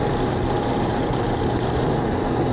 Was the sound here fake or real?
real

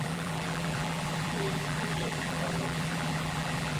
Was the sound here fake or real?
fake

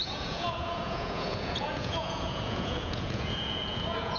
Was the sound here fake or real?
fake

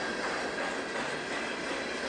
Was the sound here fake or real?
real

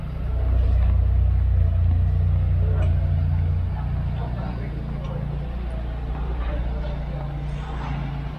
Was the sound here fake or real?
real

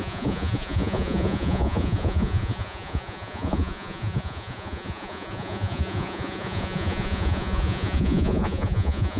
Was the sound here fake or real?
fake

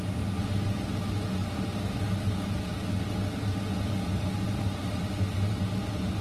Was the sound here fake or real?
real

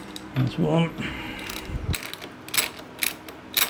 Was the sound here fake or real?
real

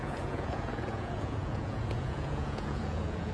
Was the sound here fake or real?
fake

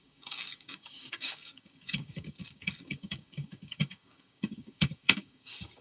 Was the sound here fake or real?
fake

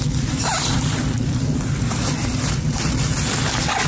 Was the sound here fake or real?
fake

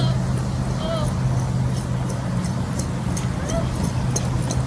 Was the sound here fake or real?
real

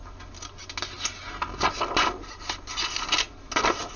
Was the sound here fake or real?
real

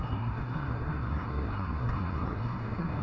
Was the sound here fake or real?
fake